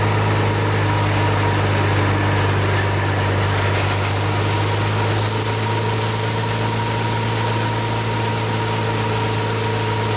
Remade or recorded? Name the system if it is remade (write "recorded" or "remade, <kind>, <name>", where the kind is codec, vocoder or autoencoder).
recorded